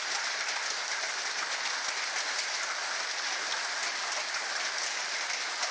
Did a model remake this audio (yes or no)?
no